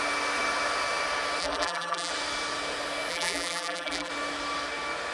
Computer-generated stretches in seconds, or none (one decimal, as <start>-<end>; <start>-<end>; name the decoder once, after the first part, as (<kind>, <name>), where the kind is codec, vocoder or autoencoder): 1.4-2.1 (vocoder, BigVGAN v2); 3.1-4.1

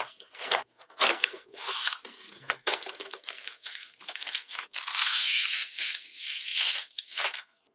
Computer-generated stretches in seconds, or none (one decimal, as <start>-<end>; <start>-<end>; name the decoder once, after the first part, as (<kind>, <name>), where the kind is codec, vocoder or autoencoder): 0.0-7.7 (codec, SNAC)